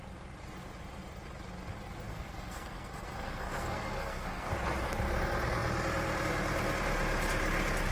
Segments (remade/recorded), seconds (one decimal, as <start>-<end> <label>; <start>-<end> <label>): 0.0-2.1 recorded; 2.1-4.5 remade; 4.5-7.9 recorded